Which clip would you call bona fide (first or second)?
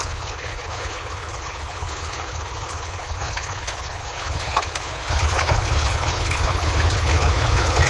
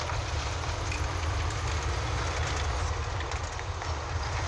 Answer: second